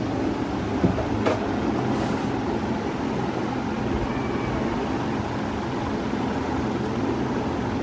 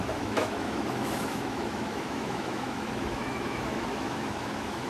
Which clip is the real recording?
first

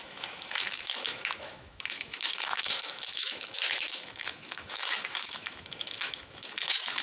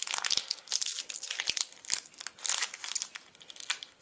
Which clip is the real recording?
second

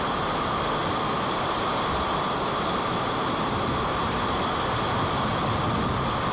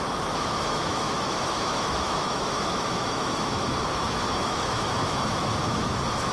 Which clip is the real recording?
first